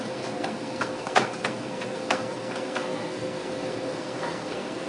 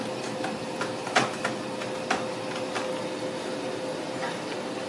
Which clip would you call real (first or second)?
second